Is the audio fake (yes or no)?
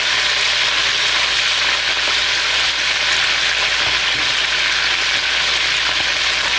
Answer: no